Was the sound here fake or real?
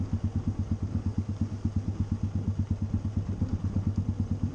real